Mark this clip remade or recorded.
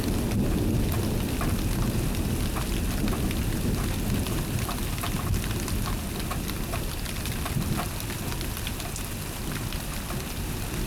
recorded